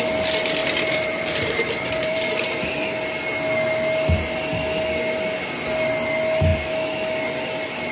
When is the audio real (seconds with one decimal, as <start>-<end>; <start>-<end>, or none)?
0.0-0.6; 2.9-7.9